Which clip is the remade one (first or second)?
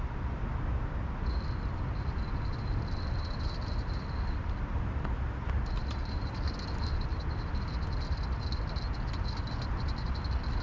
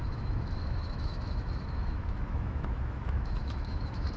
second